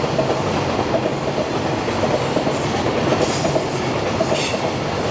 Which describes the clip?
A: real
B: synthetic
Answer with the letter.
A